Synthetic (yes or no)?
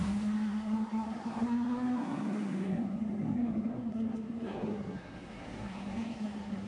yes